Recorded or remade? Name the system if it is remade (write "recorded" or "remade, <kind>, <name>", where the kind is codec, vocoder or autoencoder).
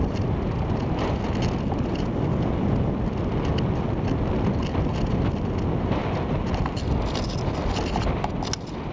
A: recorded